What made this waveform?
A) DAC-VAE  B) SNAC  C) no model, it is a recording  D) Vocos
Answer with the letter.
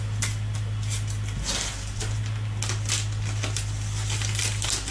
C